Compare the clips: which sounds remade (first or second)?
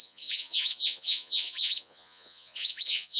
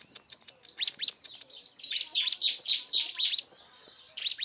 first